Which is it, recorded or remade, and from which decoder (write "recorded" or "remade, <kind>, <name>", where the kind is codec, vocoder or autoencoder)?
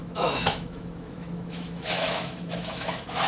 remade, autoencoder, DAC-VAE